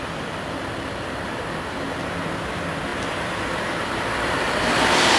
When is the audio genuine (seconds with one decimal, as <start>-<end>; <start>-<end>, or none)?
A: none